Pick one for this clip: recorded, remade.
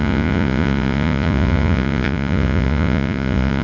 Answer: remade